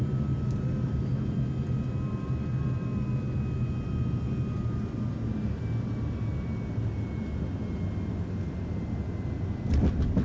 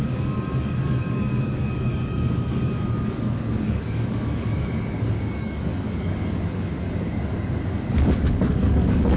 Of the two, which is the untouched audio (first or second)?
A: first